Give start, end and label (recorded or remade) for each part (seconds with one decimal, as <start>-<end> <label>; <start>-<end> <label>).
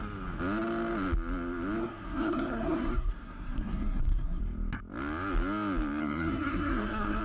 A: 0.0-1.8 recorded; 1.8-4.4 remade; 4.4-6.0 recorded; 6.0-7.2 remade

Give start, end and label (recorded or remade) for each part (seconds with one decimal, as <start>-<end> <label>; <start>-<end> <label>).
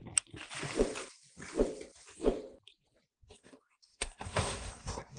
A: 0.0-3.1 recorded; 3.1-5.2 remade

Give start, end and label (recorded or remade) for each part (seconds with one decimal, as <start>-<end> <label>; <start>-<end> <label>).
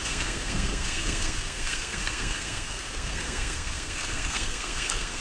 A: 0.0-5.2 remade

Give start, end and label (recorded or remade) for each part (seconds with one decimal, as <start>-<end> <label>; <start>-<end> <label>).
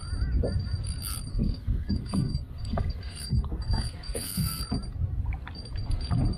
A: 0.0-1.3 recorded; 1.3-4.6 remade; 4.6-6.4 recorded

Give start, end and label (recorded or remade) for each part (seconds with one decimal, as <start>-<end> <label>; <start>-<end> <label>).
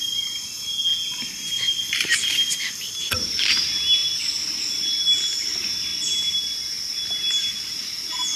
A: 0.0-8.4 recorded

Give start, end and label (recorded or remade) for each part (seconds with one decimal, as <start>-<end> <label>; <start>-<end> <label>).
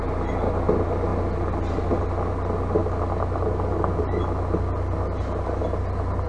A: 0.0-6.3 recorded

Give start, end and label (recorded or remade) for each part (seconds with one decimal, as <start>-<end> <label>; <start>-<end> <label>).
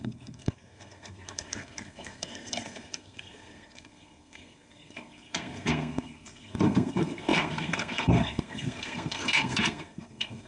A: 0.0-10.5 remade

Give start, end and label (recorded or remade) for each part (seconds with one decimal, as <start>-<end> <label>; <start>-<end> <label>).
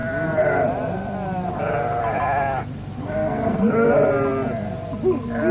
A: 0.0-3.0 recorded; 3.0-3.9 remade; 3.9-5.5 recorded